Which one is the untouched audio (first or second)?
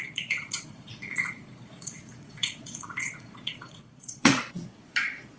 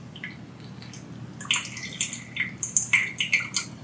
second